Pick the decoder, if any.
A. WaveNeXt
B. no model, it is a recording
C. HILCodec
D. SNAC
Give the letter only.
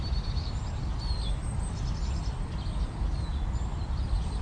B